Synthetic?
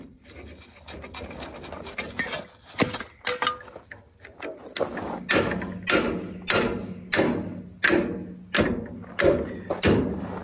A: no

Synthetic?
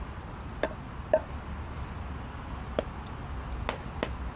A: no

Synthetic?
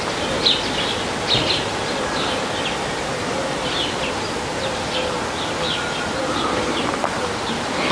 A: no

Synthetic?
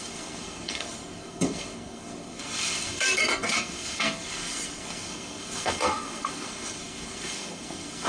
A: yes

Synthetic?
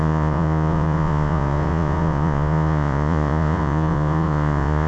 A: yes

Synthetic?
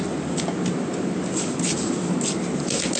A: no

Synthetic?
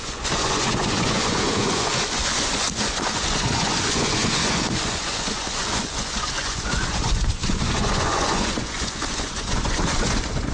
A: yes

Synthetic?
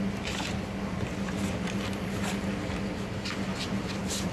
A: no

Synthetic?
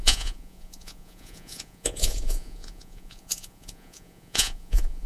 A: yes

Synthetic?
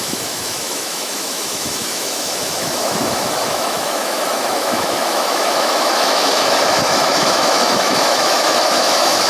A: yes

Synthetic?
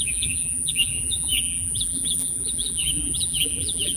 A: yes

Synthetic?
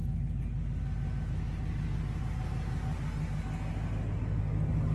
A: no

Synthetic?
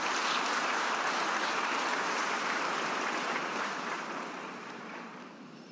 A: yes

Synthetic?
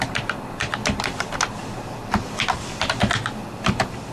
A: yes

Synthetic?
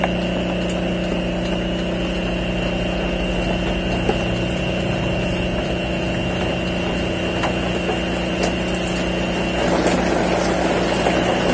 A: no